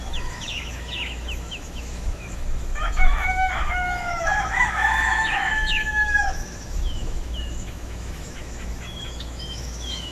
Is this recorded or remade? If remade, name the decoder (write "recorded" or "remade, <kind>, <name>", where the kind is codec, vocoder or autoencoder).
remade, autoencoder, DAC-VAE